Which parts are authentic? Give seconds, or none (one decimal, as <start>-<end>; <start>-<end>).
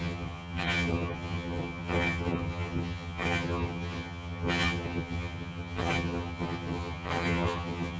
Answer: none